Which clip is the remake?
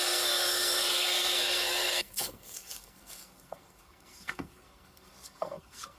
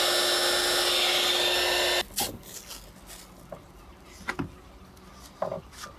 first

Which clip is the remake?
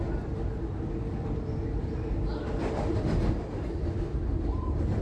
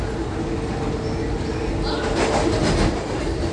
first